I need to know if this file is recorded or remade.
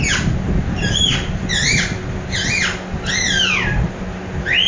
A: recorded